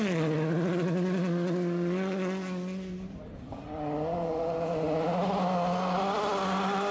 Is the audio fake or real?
real